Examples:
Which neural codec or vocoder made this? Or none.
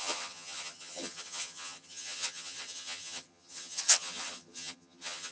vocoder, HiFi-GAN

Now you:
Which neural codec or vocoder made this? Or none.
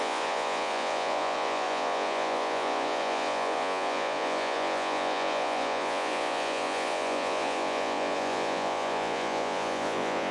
vocoder, Vocos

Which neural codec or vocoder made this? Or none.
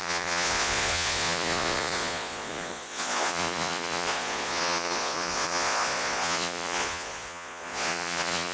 vocoder, Vocos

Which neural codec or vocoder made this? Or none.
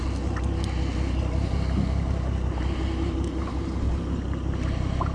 none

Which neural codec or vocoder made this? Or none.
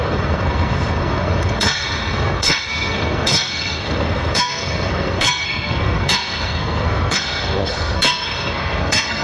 codec, SNAC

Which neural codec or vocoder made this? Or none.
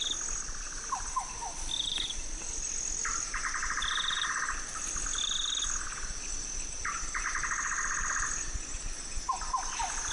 vocoder, BigVGAN v2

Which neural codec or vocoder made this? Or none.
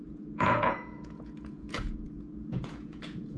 vocoder, Vocos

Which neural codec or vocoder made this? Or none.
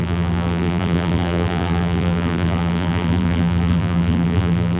vocoder, BigVGAN v2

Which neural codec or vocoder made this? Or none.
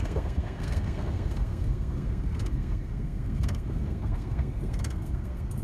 codec, SNAC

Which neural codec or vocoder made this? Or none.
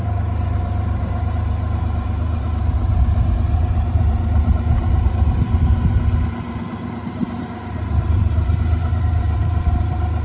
vocoder, BigVGAN v2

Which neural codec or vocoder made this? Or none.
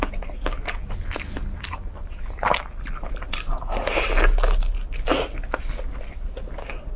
none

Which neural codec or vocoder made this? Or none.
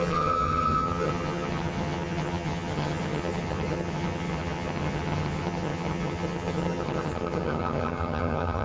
vocoder, HiFi-GAN